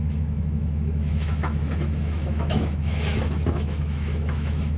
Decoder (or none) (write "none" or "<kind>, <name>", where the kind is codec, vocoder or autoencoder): autoencoder, DAC-VAE